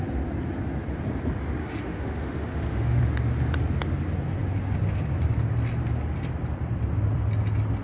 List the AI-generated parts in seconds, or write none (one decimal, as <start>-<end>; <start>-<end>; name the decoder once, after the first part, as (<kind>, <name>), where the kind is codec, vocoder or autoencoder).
1.6-3.0 (autoencoder, DAC-VAE)